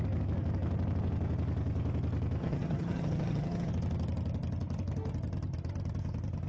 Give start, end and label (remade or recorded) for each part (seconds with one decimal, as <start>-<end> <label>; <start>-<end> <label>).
0.0-2.4 recorded; 2.4-3.7 remade; 3.7-6.5 recorded